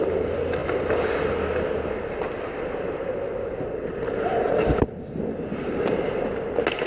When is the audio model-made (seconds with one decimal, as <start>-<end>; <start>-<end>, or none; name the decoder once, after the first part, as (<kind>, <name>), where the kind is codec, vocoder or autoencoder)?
none